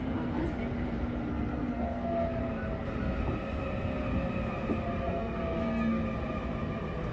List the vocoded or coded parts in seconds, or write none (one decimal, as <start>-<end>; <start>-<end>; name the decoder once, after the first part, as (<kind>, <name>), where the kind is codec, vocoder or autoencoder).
0.0-0.4 (codec, SNAC); 1.3-2.4; 5.0-6.0